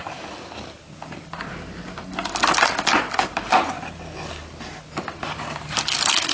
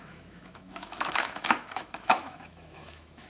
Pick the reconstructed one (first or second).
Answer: second